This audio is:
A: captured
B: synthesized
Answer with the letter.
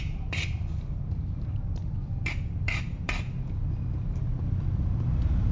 B